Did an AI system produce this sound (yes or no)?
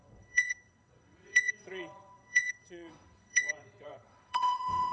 yes